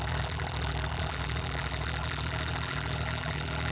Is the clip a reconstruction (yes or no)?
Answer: yes